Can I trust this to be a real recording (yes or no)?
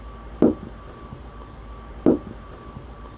no